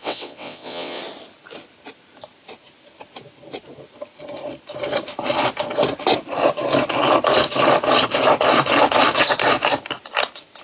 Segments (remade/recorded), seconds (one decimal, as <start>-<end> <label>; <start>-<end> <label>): 0.0-1.0 remade; 1.0-10.6 recorded